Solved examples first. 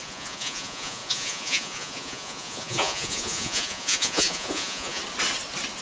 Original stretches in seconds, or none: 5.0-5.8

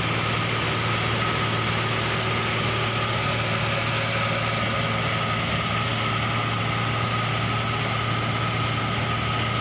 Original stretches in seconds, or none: 0.0-9.6

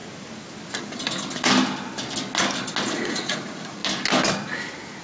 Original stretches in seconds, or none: 0.0-2.9; 3.8-5.0

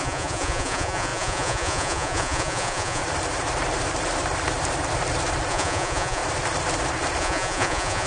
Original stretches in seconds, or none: 3.0-5.5; 6.2-7.2

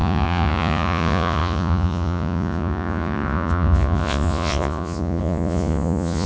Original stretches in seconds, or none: none